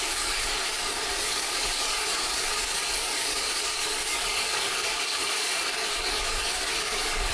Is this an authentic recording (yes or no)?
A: no